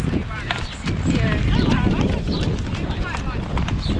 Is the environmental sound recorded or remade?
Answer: recorded